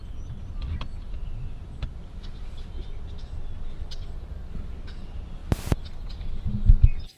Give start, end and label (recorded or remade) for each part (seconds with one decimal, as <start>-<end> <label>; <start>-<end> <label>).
0.0-7.2 recorded